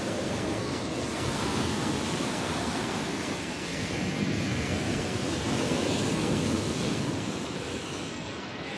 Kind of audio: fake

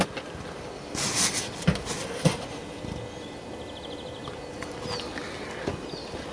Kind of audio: real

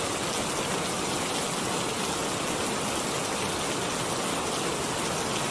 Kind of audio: real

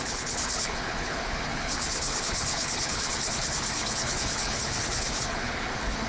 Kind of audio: fake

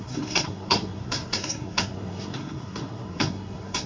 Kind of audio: fake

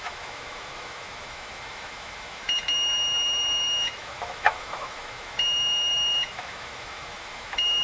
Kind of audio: fake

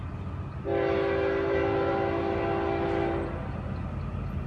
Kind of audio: real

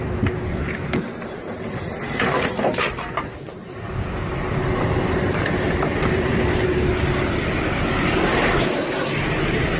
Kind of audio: real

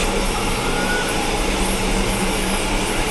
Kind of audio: real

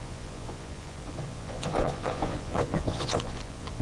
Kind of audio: fake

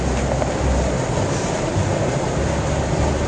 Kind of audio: real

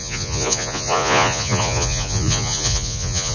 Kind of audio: fake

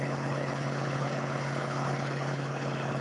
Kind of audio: fake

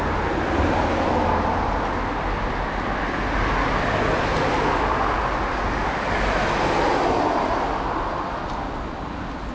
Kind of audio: real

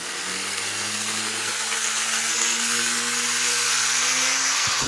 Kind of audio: fake